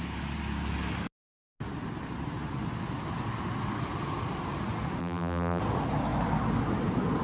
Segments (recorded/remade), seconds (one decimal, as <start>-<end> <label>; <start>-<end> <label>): 0.0-5.0 recorded; 5.0-5.6 remade; 5.6-7.2 recorded

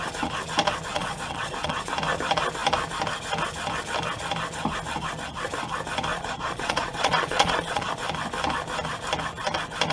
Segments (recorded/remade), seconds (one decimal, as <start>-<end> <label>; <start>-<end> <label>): 0.0-0.9 recorded; 0.9-1.9 remade; 1.9-6.1 recorded; 6.1-7.9 remade; 7.9-9.9 recorded

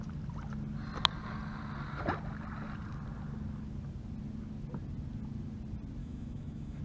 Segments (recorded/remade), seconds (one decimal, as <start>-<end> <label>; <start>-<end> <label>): 0.0-6.0 recorded; 6.0-6.8 remade

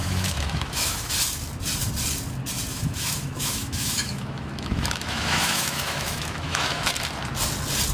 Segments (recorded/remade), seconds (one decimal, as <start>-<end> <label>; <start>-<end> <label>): 0.0-1.1 remade; 1.1-2.7 recorded; 2.7-6.9 remade; 6.9-7.9 recorded